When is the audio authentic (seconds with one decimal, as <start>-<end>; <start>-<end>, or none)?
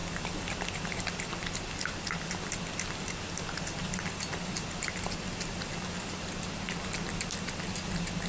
0.0-8.3